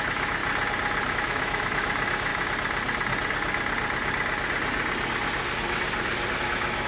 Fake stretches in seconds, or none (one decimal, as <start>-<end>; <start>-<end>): 0.0-0.4; 1.1-2.3; 6.4-6.9